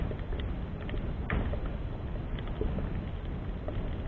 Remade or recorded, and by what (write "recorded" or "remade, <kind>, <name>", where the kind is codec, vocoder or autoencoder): recorded